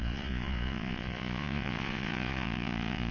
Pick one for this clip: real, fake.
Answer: fake